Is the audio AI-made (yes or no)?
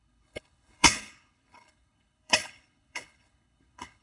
yes